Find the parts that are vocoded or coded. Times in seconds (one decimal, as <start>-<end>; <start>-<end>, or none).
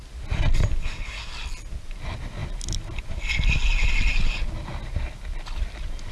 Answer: 0.8-1.3